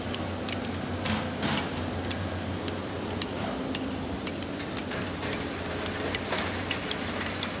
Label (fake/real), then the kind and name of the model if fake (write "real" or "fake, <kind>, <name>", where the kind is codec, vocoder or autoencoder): real